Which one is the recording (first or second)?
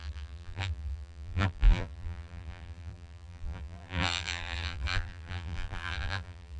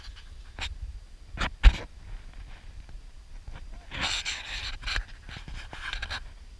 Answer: second